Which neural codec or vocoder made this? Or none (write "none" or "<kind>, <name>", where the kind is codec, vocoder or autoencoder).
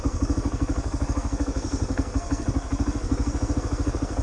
codec, SNAC